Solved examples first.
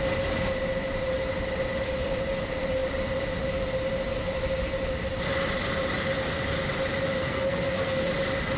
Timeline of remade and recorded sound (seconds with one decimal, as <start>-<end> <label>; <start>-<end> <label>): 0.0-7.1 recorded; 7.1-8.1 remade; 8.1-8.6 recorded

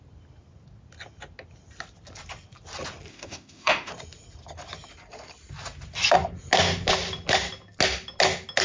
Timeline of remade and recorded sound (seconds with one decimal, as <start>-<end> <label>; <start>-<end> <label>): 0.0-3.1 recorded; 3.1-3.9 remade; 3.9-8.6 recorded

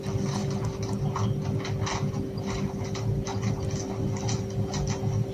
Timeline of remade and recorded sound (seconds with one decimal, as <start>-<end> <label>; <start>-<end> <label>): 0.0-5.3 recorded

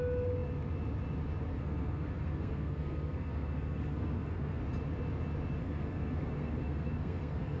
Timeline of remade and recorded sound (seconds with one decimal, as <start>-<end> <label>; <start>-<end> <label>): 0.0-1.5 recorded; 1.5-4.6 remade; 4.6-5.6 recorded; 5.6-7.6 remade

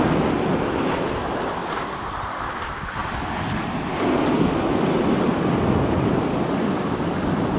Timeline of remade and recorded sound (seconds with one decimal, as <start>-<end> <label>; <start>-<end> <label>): 0.0-7.6 recorded

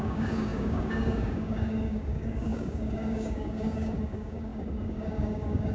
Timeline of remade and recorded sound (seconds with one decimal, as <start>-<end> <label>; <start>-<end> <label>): 0.0-5.7 remade

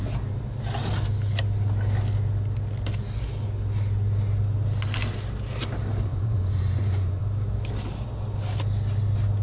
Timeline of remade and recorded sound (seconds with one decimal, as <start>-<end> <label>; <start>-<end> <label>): 0.0-6.1 recorded; 6.1-7.2 remade; 7.2-9.4 recorded

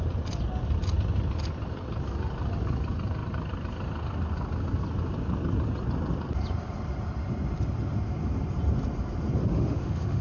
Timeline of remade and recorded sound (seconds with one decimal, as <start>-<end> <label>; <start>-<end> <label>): 0.0-9.4 recorded; 9.4-10.2 remade